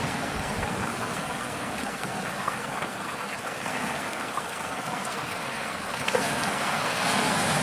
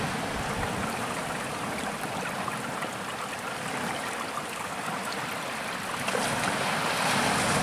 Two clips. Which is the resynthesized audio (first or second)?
first